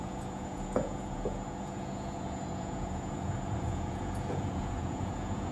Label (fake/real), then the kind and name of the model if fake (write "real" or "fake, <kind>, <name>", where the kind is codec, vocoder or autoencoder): fake, vocoder, Vocos